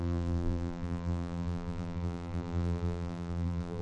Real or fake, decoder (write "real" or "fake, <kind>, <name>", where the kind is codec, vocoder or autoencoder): fake, vocoder, BigVGAN v2